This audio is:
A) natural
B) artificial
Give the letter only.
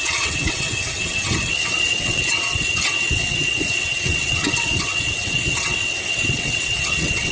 B